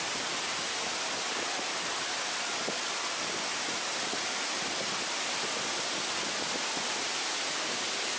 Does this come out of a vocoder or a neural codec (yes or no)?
no